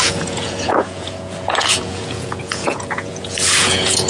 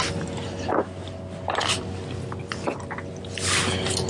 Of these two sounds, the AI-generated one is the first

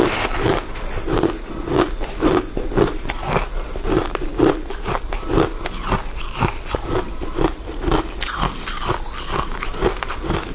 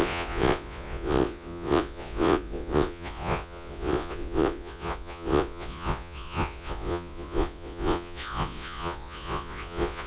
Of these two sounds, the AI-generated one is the second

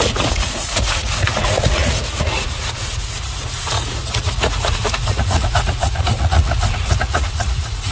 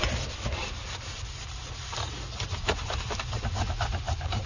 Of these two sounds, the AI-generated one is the first